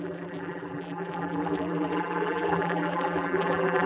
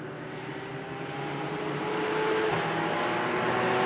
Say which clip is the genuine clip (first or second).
second